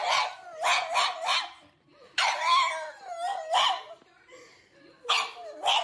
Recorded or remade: recorded